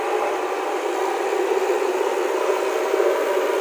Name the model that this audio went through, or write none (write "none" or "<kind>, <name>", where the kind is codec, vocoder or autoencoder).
none